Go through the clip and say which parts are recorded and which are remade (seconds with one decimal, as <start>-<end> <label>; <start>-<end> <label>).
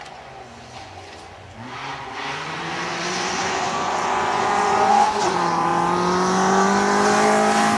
0.0-5.7 remade; 5.7-7.8 recorded